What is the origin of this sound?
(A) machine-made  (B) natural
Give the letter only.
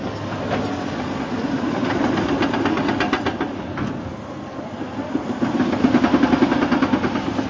B